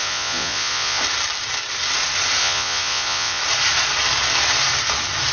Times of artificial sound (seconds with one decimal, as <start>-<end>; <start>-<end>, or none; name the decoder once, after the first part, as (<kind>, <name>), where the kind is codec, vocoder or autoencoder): 0.0-1.0 (vocoder, Vocos); 2.4-3.4